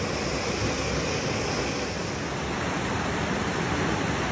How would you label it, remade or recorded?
recorded